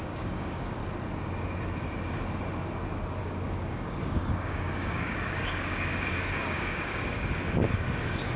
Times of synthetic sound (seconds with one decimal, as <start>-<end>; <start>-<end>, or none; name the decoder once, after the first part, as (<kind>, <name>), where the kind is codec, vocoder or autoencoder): 0.0-0.8 (codec, DAC); 3.2-8.4

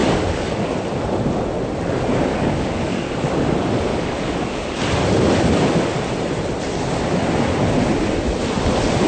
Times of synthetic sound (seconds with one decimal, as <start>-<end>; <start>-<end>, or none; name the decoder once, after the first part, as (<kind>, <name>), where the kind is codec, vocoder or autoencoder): 0.0-0.6 (codec, DAC); 2.3-3.1; 3.9-4.8

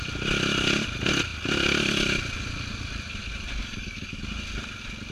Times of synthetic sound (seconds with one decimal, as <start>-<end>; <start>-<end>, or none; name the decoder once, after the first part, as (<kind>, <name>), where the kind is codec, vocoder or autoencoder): 3.6-4.2 (codec, DAC)

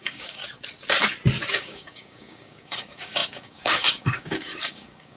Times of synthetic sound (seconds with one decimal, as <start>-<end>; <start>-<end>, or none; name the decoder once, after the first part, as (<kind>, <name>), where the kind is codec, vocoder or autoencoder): 0.0-0.4 (codec, DAC); 1.5-5.2

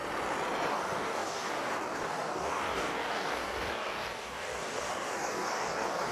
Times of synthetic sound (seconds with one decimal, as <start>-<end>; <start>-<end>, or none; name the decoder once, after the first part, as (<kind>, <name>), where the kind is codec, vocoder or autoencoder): 0.7-6.1 (codec, DAC)

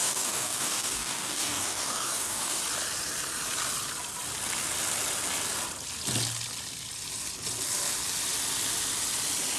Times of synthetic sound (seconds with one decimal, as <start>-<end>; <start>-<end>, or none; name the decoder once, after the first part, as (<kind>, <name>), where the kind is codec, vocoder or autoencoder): 0.0-2.6 (codec, DAC)

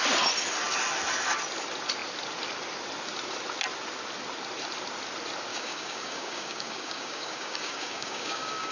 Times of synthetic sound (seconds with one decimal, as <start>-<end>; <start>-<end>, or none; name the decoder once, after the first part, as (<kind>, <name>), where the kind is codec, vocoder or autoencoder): 5.5-8.7 (codec, DAC)

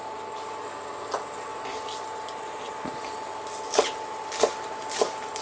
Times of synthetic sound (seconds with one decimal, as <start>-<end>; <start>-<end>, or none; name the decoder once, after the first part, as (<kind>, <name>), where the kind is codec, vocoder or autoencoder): none